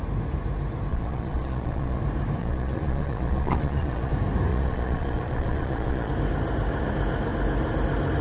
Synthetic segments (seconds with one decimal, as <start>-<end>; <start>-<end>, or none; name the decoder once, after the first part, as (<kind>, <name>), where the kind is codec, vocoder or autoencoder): 0.9-2.0 (vocoder, Vocos); 2.4-4.1; 4.5-6.1